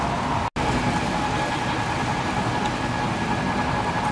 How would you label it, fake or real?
real